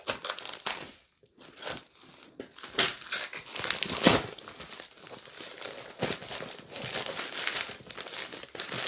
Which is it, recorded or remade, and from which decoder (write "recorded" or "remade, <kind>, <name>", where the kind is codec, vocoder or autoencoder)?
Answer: recorded